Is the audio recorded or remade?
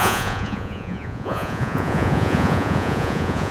remade